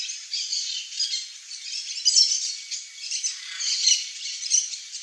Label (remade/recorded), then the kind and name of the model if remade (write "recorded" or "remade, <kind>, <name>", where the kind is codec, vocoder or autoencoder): recorded